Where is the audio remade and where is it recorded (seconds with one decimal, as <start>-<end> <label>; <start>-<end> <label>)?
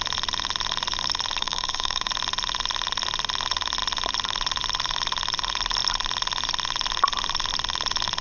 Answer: 0.0-1.4 recorded; 1.4-2.1 remade; 2.1-8.2 recorded